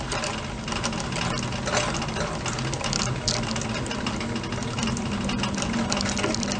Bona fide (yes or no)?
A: yes